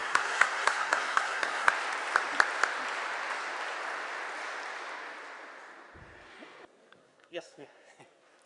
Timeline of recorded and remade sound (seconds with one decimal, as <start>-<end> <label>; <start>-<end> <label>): 0.0-1.7 remade; 1.7-7.0 recorded; 7.0-8.0 remade; 8.0-8.5 recorded